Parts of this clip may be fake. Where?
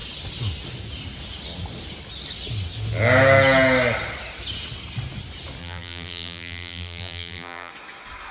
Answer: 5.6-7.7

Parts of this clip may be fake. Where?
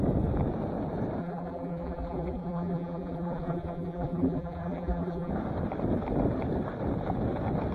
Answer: 1.2-5.3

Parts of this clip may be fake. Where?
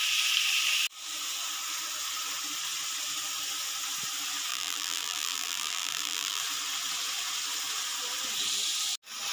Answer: 4.5-6.4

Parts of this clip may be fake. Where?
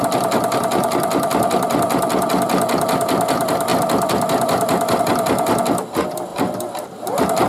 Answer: none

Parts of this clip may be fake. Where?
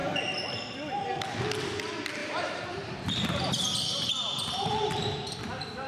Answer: 2.2-5.4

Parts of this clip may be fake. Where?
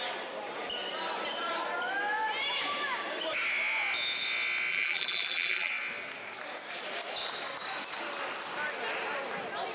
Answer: 4.7-5.7